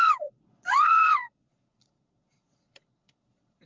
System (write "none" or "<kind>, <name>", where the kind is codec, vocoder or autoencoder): vocoder, Vocos